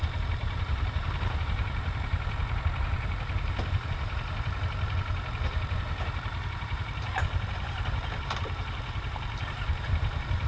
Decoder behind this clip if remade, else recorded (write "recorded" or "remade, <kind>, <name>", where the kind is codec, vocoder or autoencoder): remade, vocoder, BigVGAN v2